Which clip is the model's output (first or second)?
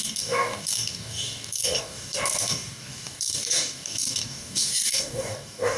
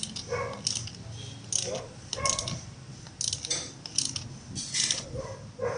first